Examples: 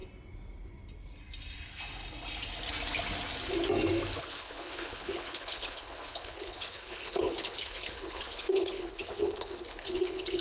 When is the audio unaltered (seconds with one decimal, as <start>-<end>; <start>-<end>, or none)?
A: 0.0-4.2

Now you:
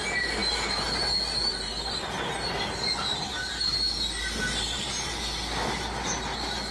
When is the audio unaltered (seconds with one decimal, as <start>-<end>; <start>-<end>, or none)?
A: 0.0-6.7

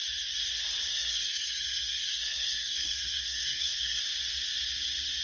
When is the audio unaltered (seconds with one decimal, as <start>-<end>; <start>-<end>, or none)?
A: 0.0-0.9; 4.0-5.2

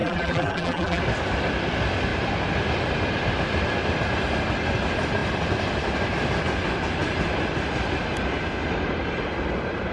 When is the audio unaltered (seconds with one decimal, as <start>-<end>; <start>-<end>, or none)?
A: 1.0-9.9

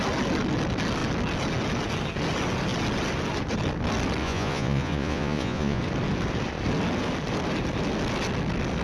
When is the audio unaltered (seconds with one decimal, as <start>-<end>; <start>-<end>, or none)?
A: 0.0-4.2; 5.8-8.8